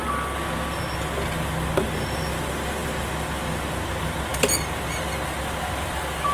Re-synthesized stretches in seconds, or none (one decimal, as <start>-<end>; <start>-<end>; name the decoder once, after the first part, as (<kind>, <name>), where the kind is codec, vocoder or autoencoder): none